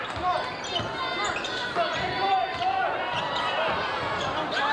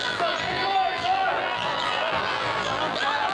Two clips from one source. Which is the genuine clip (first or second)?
first